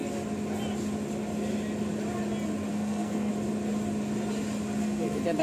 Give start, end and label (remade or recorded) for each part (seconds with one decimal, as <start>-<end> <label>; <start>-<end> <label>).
0.0-2.7 recorded; 2.7-3.3 remade; 3.3-4.8 recorded; 4.8-5.4 remade